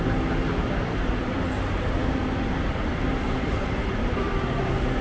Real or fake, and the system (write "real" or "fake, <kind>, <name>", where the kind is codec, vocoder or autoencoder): fake, vocoder, BigVGAN v2